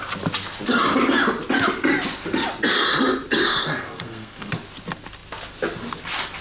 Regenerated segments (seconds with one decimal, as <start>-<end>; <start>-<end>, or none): 3.4-4.5